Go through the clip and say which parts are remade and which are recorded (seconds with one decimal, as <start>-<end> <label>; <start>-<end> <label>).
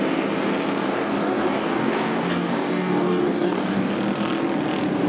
0.0-0.8 recorded; 0.8-3.9 remade; 3.9-5.1 recorded